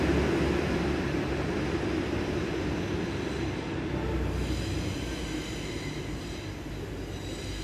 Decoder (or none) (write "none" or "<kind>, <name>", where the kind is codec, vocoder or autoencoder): none